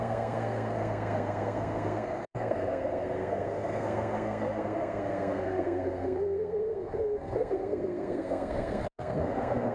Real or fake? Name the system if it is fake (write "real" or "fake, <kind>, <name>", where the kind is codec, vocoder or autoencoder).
fake, codec, SNAC